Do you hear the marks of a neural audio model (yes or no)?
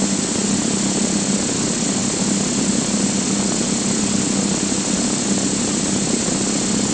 no